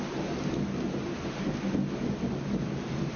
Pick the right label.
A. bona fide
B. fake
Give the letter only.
A